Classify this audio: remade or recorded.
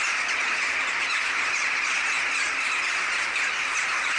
recorded